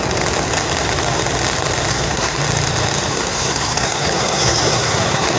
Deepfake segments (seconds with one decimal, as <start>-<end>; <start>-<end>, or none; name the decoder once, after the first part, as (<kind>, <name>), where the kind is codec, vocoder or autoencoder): 1.9-2.4 (codec, SNAC); 3.1-5.4